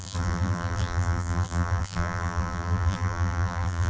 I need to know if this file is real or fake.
fake